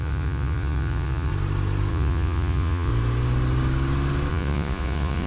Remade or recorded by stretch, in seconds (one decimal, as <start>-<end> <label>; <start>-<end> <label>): 0.0-1.3 remade; 1.3-1.9 recorded; 1.9-2.9 remade; 2.9-4.3 recorded; 4.3-5.3 remade